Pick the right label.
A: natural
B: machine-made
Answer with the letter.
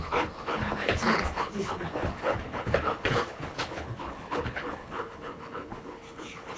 B